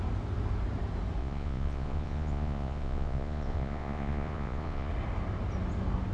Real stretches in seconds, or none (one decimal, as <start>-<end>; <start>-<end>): 0.0-1.2; 4.9-6.1